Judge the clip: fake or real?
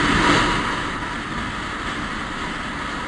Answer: real